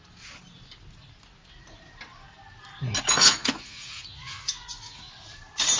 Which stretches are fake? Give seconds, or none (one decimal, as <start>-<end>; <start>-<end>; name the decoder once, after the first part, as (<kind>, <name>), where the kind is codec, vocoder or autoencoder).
3.1-5.1 (vocoder, Vocos)